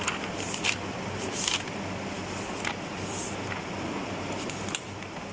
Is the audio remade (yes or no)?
yes